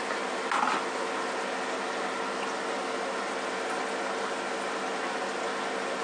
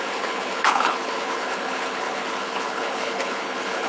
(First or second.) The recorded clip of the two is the first